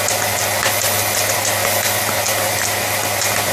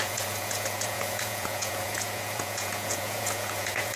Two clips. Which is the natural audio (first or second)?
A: first